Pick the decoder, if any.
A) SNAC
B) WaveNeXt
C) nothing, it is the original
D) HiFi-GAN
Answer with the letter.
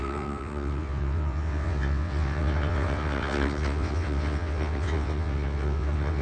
B